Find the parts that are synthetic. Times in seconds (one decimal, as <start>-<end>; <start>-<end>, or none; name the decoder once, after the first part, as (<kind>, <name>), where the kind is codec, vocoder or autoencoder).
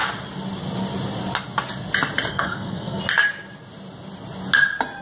2.3-3.0 (codec, SNAC)